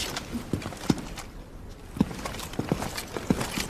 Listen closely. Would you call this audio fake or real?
real